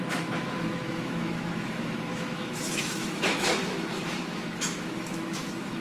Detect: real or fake fake